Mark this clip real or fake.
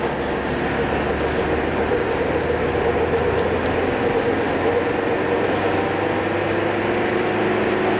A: real